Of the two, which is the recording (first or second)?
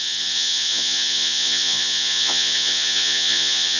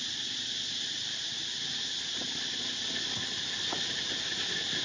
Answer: second